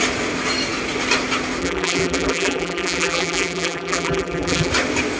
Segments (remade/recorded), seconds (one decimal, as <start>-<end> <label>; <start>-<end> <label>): 0.0-1.6 recorded; 1.6-4.7 remade; 4.7-5.2 recorded